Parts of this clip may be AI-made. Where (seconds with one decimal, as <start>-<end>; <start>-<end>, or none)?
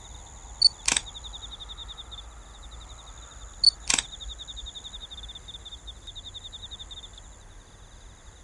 none